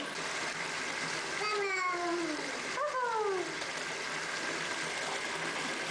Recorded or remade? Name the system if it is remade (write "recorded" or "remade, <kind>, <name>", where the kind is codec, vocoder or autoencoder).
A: recorded